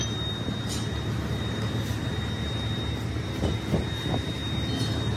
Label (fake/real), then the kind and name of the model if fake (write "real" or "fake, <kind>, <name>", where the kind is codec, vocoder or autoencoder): real